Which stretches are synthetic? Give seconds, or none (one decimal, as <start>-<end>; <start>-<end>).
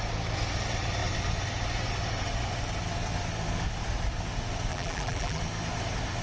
4.7-5.4